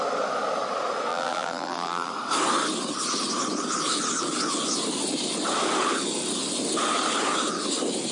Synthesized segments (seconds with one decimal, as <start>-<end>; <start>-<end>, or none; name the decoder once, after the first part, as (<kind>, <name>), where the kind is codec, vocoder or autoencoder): 1.1-2.1 (vocoder, BigVGAN v2)